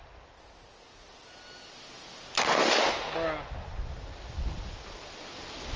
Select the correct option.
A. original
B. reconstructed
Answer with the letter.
A